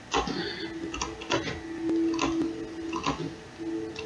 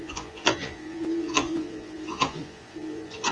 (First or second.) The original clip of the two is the first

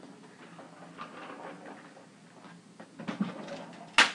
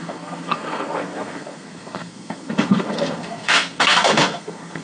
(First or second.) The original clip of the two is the first